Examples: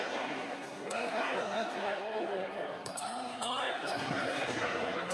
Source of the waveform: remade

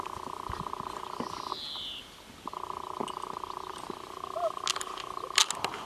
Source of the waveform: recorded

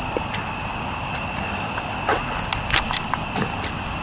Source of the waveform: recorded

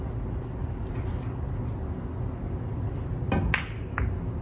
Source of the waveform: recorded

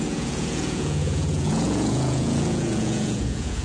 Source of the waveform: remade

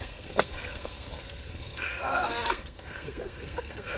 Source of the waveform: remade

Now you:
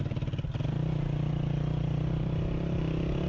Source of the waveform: recorded